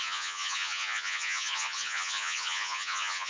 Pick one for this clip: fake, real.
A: fake